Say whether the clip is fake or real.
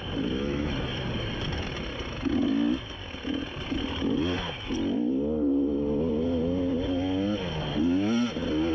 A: real